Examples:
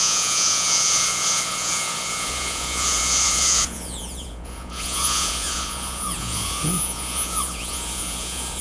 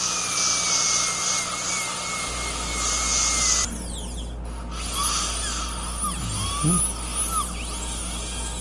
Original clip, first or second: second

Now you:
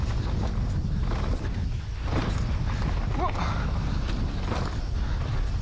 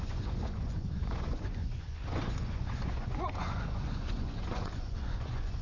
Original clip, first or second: first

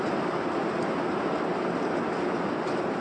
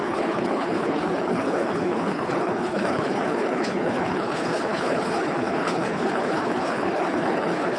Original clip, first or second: first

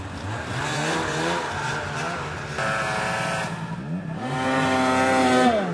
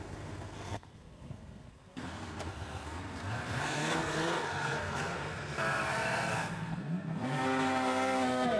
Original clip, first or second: first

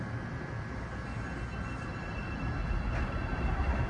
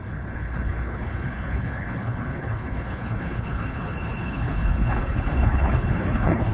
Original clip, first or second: first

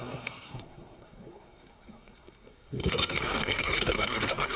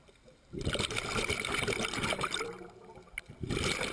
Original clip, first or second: second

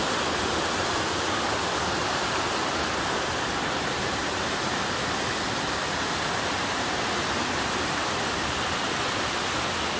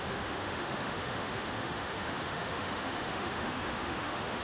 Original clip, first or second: first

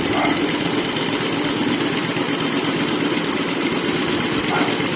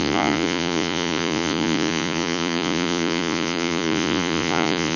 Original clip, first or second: first